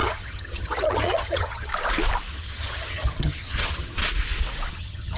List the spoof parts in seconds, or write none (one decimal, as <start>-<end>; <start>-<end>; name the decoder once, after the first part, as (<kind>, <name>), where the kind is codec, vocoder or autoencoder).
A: 0.0-1.7 (vocoder, HiFi-GAN); 2.3-4.0; 4.7-5.2